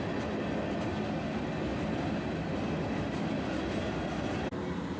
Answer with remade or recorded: recorded